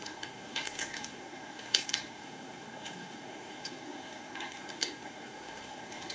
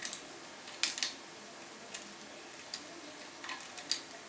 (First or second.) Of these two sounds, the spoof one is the first